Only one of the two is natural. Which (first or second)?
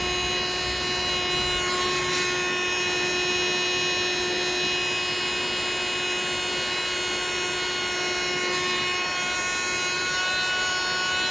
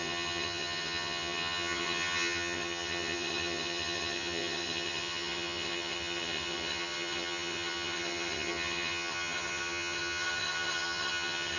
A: first